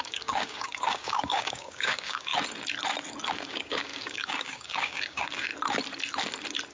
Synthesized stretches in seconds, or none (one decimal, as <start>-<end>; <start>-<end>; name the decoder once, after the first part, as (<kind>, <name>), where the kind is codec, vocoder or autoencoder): 0.0-2.3 (codec, DAC); 3.5-5.5